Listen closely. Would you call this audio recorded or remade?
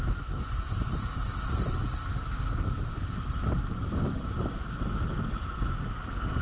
recorded